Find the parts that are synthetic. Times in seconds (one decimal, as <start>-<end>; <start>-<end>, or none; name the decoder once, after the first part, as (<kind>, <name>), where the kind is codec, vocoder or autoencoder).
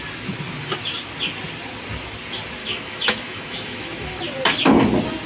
2.6-4.2 (autoencoder, DAC-VAE)